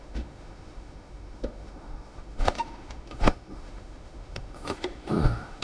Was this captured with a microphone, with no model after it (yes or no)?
no